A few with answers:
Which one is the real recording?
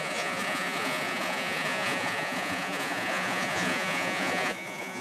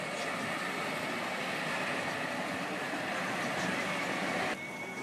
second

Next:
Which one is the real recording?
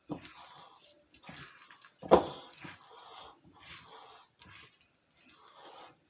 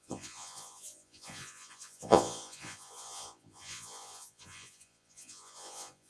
first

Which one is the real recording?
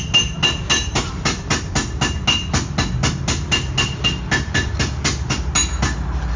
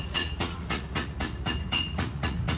first